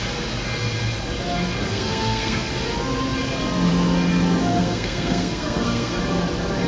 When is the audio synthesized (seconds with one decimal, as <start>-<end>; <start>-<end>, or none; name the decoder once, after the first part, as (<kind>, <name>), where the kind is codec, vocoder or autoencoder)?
1.6-2.5 (codec, SNAC); 4.5-6.0